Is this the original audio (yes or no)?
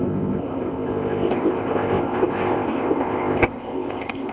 no